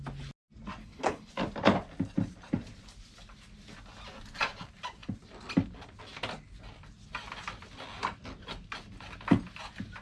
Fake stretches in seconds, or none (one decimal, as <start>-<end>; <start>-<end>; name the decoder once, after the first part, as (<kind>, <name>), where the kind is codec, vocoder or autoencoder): 0.8-1.3 (codec, HILCodec)